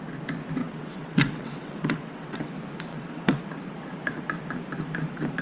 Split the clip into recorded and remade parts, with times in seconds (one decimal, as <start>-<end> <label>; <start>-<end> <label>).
0.0-0.6 recorded; 0.6-2.5 remade; 2.5-2.9 recorded; 2.9-3.4 remade; 3.4-5.4 recorded